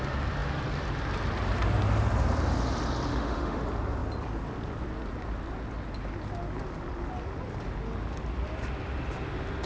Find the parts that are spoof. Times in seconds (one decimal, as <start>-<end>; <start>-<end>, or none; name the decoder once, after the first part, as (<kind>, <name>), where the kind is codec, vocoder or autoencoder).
3.1-3.6 (autoencoder, DAC-VAE)